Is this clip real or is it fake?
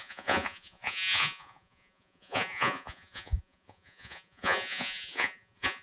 fake